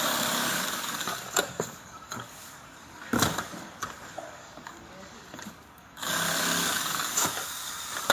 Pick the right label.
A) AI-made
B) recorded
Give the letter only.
A